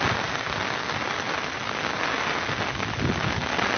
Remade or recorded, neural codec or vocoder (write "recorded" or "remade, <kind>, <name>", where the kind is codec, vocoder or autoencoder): recorded